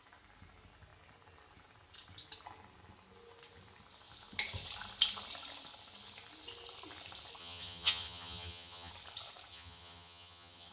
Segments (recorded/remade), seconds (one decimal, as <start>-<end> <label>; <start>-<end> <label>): 0.0-7.4 recorded; 7.4-8.9 remade; 8.9-9.5 recorded; 9.5-10.7 remade